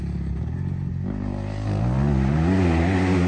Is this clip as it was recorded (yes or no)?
yes